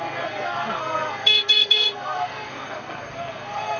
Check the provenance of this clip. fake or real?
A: fake